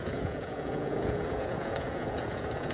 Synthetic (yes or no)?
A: yes